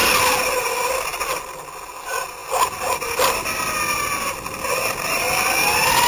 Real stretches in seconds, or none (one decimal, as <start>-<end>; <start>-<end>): 0.0-6.1